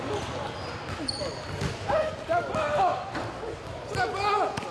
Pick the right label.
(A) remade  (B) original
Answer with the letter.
B